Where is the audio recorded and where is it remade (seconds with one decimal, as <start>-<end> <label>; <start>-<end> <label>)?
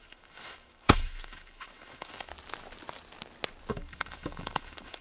0.0-2.3 remade; 2.3-3.7 recorded; 3.7-5.0 remade